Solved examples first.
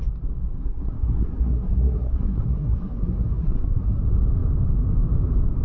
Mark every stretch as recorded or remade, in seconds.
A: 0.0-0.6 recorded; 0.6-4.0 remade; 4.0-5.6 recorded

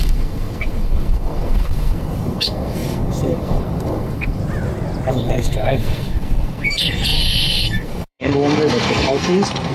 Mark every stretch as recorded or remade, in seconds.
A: 0.0-4.4 remade; 4.4-5.1 recorded; 5.1-9.7 remade

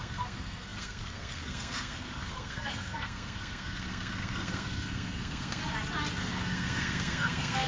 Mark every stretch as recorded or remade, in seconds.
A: 0.0-5.6 remade; 5.6-6.2 recorded; 6.2-7.7 remade

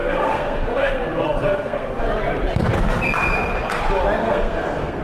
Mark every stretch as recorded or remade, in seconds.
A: 0.0-2.0 remade; 2.0-4.2 recorded; 4.2-5.0 remade